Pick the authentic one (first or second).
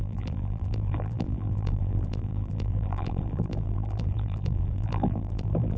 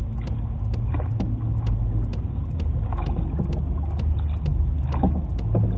second